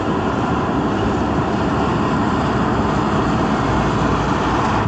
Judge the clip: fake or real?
fake